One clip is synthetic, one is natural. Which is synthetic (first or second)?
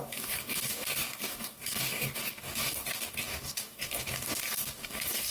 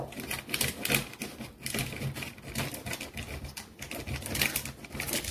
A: first